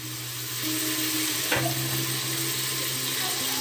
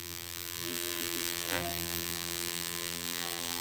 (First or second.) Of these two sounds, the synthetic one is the second